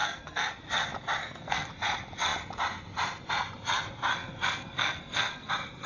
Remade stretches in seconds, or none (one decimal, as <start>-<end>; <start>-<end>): 0.0-0.5; 1.2-1.7; 4.1-5.5